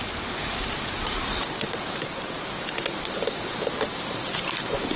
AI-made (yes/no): yes